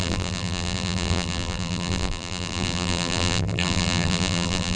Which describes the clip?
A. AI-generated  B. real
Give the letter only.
A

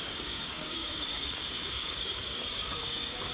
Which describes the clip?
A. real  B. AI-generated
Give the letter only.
B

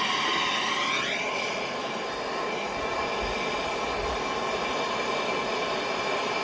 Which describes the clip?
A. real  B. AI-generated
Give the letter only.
A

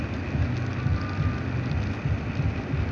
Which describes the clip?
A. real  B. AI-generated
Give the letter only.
A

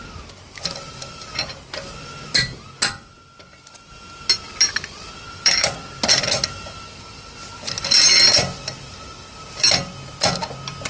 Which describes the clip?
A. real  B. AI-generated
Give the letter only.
A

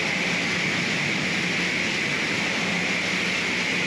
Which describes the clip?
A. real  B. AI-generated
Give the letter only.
A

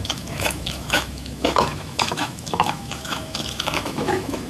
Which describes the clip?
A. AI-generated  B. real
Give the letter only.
A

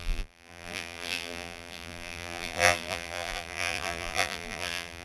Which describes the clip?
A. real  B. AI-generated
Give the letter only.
B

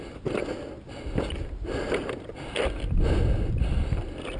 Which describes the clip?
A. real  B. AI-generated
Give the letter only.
A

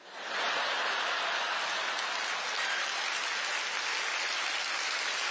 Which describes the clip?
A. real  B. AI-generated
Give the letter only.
A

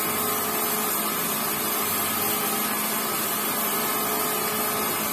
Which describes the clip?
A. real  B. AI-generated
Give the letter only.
A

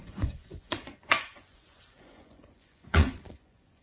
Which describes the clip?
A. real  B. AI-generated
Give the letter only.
B